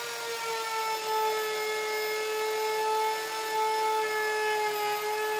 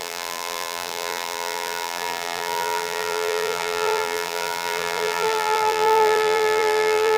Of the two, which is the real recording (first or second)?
first